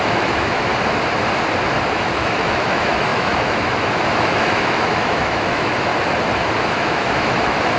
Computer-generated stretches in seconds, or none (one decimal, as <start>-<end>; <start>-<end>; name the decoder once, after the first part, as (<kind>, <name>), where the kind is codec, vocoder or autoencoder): 0.0-0.7 (autoencoder, DAC-VAE); 1.8-5.9; 6.6-7.8